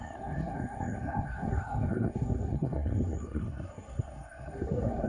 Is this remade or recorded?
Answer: remade